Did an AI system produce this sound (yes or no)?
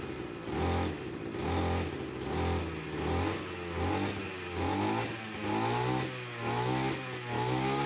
no